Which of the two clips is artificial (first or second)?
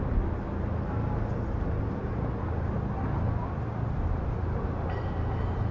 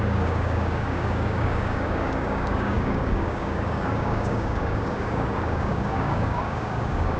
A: second